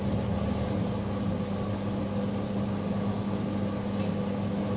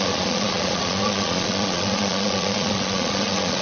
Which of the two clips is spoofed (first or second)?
second